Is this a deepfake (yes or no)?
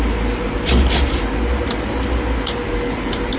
no